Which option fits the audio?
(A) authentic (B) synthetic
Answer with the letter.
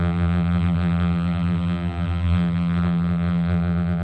B